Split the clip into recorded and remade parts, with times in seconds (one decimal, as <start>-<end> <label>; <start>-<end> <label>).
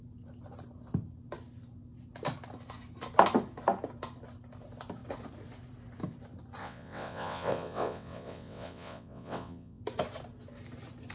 0.0-6.6 recorded; 6.6-9.8 remade; 9.8-11.1 recorded